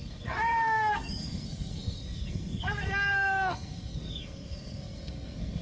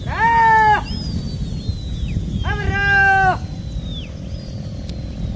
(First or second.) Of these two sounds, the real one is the second